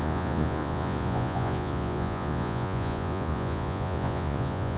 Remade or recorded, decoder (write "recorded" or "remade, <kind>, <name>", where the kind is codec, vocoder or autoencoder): remade, vocoder, Vocos